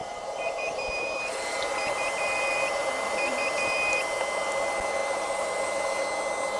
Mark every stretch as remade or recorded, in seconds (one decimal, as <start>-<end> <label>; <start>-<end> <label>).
0.0-4.0 remade; 4.0-5.0 recorded; 5.0-5.6 remade; 5.6-6.6 recorded